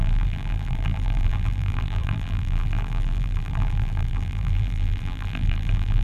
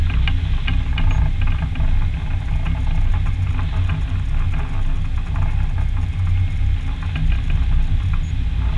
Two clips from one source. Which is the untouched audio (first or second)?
second